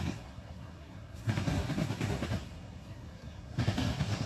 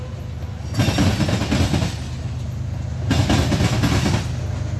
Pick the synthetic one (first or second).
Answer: first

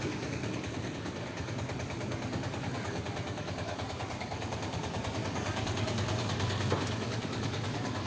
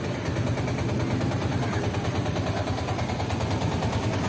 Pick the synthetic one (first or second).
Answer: first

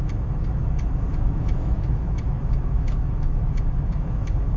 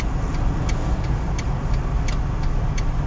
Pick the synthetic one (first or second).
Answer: first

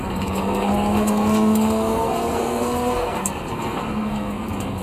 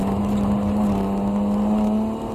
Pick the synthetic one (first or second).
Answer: first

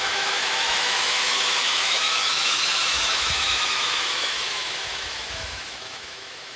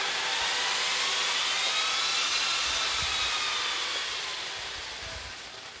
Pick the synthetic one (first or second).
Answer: first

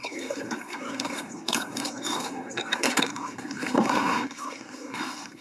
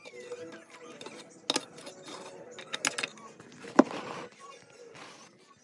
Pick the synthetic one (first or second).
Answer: first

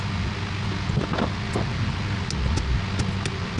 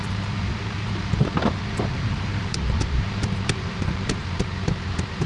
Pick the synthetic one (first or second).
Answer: second